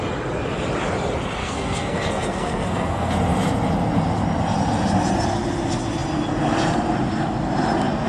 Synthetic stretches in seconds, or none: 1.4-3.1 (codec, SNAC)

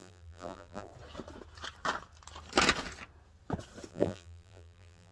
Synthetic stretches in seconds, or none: 0.0-0.9 (vocoder, BigVGAN v2); 3.9-5.1

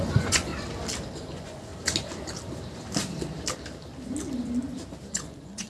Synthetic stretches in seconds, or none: 0.0-0.5 (vocoder, Vocos); 1.1-1.7; 5.1-5.7

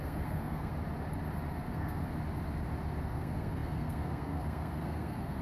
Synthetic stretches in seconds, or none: 0.0-0.7 (codec, SNAC); 1.5-2.0; 3.0-5.4